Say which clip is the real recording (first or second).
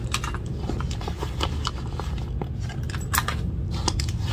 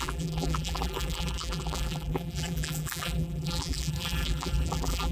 first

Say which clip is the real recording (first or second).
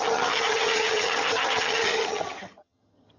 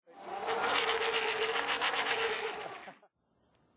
second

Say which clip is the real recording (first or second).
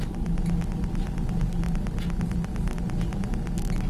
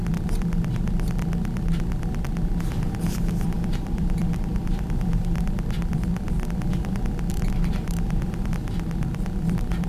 first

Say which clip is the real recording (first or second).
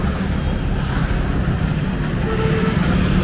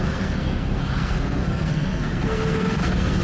first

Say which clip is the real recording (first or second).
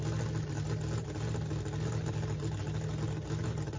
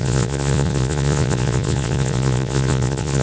first